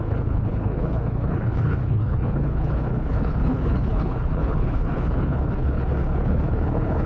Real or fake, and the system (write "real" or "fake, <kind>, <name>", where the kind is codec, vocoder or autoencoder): fake, codec, HILCodec